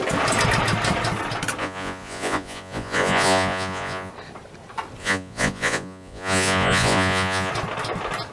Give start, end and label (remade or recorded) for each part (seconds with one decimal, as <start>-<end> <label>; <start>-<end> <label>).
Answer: 0.0-1.6 recorded; 1.6-4.1 remade; 4.1-5.0 recorded; 5.0-7.5 remade; 7.5-8.3 recorded